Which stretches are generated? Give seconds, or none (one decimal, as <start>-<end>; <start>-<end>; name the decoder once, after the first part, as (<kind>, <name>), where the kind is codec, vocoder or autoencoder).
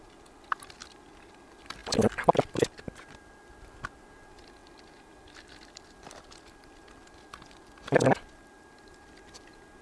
0.0-0.8 (vocoder, BigVGAN v2); 1.3-9.8